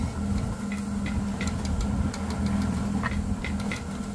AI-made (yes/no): no